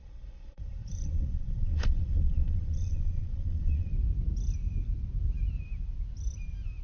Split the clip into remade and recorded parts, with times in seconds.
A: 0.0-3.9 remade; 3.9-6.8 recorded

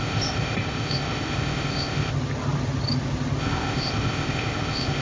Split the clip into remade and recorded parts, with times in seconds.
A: 0.0-2.1 remade; 2.1-3.4 recorded; 3.4-5.0 remade

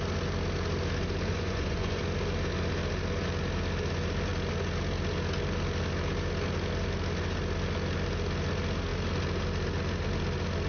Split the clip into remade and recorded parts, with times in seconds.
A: 0.0-1.3 recorded; 1.3-2.0 remade; 2.0-10.7 recorded

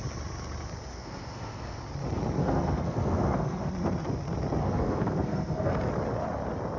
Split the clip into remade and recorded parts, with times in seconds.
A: 0.0-0.9 recorded; 0.9-1.8 remade; 1.8-2.4 recorded; 2.4-3.7 remade; 3.7-4.6 recorded; 4.6-5.8 remade; 5.8-6.8 recorded

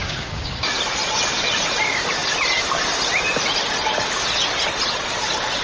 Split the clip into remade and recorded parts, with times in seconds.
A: 0.0-0.7 remade; 0.7-5.6 recorded

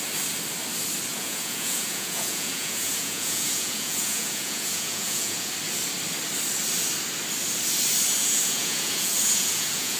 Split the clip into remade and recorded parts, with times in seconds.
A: 0.0-1.1 recorded; 1.1-5.5 remade; 5.5-8.2 recorded; 8.2-10.0 remade

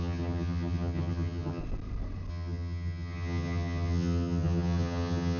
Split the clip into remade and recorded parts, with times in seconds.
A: 0.0-1.6 remade; 1.6-2.3 recorded; 2.3-5.4 remade

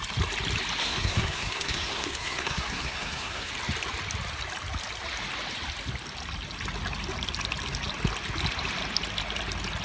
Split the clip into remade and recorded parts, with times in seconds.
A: 0.0-0.8 recorded; 0.8-3.5 remade; 3.5-9.8 recorded